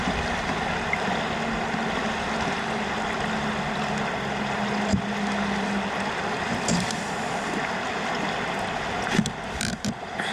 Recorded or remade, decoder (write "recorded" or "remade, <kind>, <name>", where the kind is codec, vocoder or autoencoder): recorded